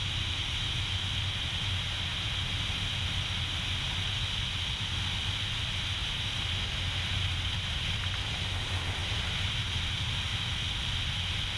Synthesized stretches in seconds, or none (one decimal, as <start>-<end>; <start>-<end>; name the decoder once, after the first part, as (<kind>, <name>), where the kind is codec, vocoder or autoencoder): none